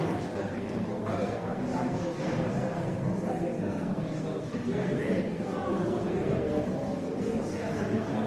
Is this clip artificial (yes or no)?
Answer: yes